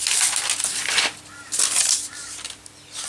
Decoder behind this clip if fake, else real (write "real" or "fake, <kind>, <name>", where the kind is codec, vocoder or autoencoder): real